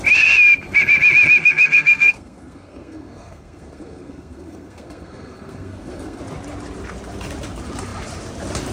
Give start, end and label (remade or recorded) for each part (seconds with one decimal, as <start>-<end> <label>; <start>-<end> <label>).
0.0-1.4 recorded; 1.4-6.2 remade; 6.2-8.7 recorded